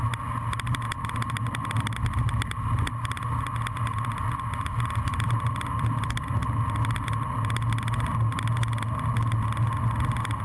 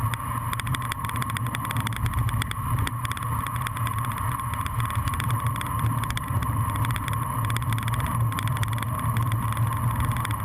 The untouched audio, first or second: first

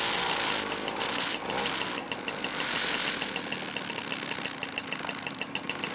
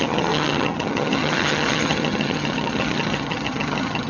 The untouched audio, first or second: first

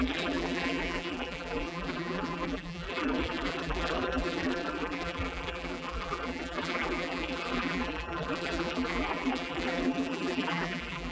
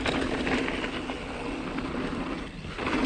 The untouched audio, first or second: second